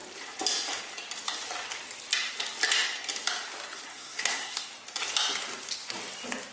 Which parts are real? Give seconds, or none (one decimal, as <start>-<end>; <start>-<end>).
0.0-3.9; 4.7-6.5